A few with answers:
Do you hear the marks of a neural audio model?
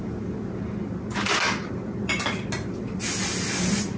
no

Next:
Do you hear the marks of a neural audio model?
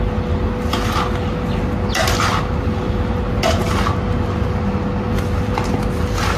no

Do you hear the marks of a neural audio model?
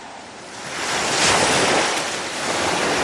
no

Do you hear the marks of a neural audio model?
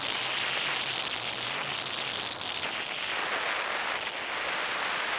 no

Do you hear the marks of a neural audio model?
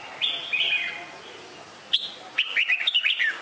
no